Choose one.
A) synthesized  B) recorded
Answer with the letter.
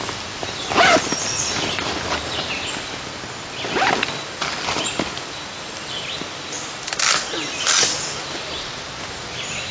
B